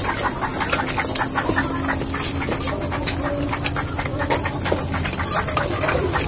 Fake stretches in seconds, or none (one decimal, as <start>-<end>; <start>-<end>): none